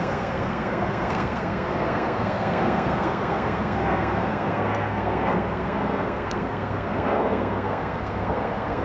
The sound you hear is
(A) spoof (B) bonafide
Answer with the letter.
A